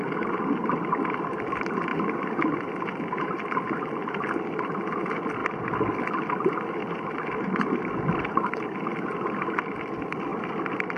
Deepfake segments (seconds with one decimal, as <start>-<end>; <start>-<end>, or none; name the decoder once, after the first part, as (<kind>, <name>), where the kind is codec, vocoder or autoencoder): none